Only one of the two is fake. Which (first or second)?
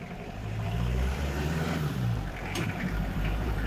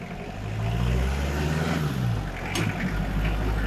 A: first